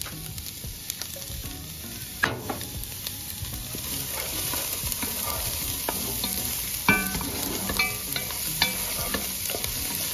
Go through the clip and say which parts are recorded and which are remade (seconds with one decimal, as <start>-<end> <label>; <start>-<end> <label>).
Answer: 0.0-1.4 recorded; 1.4-6.0 remade; 6.0-7.0 recorded; 7.0-7.6 remade; 7.6-10.1 recorded